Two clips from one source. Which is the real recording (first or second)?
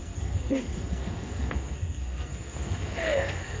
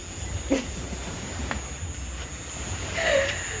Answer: second